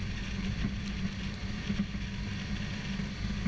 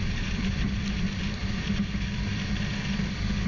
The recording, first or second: first